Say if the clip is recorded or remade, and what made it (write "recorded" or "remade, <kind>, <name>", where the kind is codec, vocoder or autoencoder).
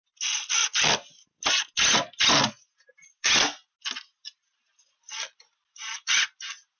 recorded